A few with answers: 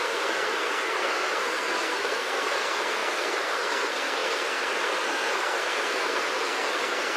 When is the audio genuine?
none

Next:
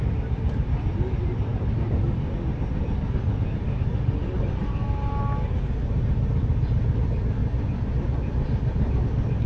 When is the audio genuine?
0.0-7.4; 9.0-9.5

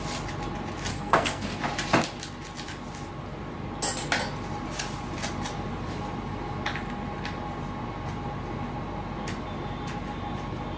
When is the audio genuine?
0.0-0.9; 1.6-10.8

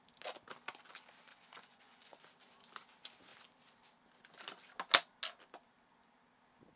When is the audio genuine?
0.0-1.3; 2.2-6.8

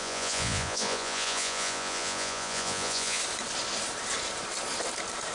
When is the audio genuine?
3.2-5.3